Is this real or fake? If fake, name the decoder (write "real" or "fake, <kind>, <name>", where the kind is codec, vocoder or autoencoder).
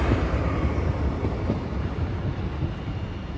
real